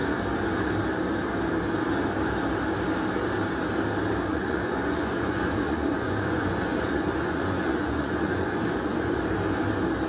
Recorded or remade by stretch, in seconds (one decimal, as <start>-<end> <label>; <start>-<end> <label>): 0.0-4.3 recorded; 4.3-9.2 remade; 9.2-10.1 recorded